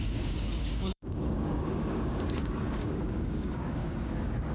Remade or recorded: remade